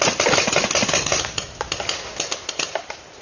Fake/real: real